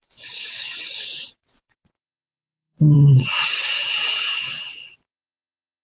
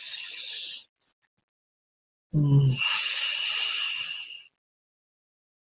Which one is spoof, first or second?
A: first